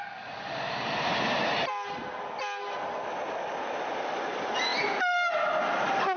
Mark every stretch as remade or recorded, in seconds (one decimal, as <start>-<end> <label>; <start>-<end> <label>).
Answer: 0.0-6.2 recorded